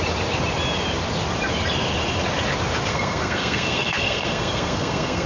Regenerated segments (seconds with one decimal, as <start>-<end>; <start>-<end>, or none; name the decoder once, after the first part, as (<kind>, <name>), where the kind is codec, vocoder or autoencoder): 2.9-5.3 (codec, SNAC)

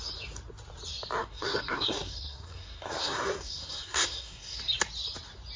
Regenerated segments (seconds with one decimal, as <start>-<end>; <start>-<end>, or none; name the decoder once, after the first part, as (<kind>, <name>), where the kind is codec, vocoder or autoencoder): 1.2-4.6 (codec, SNAC)